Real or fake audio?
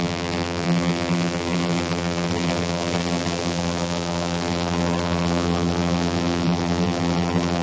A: fake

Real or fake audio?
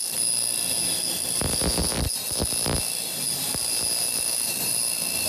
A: real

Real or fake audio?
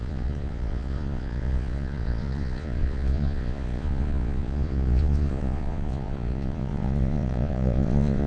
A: fake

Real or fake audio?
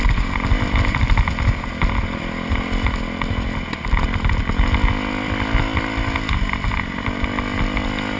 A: real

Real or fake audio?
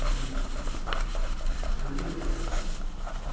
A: real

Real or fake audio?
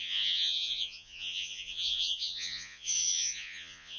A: fake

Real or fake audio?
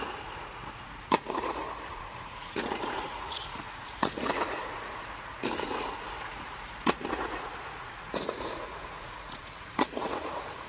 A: fake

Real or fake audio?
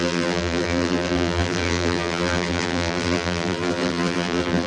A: fake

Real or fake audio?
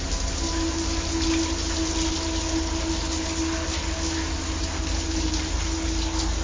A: real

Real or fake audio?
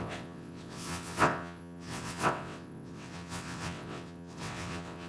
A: fake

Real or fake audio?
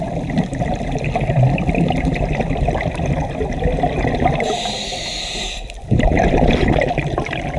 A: real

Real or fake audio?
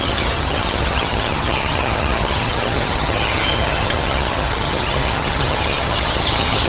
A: fake